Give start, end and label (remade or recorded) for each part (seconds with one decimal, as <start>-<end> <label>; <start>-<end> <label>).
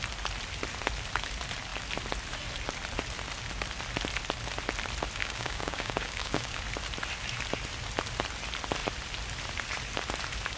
0.0-5.2 recorded; 5.2-6.6 remade; 6.6-10.6 recorded